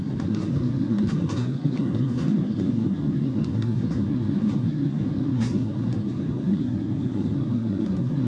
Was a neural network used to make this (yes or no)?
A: yes